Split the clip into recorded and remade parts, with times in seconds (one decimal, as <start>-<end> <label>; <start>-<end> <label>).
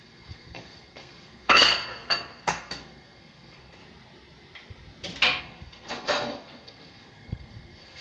0.0-3.8 remade; 3.8-5.4 recorded; 5.4-8.0 remade